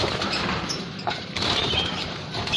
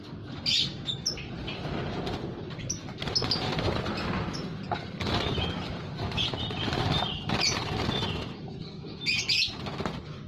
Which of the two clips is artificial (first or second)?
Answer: first